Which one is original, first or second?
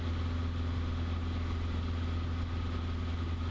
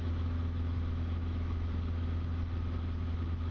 first